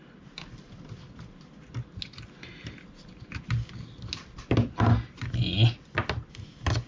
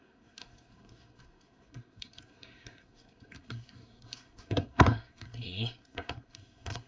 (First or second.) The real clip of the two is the first